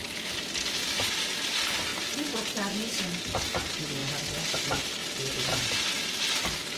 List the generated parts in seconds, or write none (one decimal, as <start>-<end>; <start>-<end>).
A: none